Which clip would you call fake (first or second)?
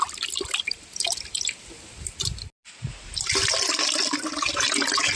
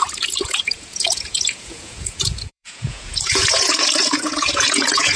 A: second